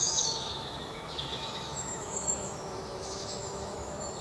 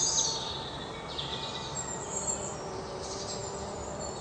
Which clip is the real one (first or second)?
second